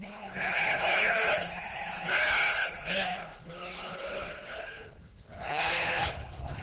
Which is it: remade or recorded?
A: remade